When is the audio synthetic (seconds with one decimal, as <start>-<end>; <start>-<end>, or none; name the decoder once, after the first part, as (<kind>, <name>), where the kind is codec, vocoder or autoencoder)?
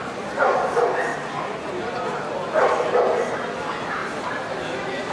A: 4.0-5.1 (vocoder, BigVGAN v2)